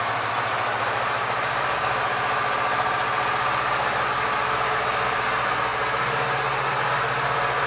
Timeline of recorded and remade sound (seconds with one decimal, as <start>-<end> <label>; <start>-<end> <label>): 0.0-7.7 recorded